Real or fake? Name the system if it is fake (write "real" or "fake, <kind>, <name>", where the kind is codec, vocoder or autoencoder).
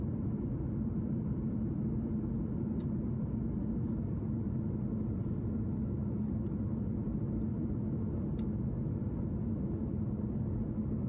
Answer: real